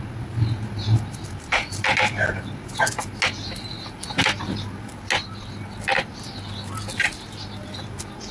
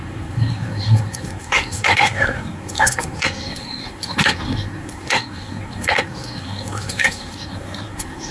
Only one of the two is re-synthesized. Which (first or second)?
second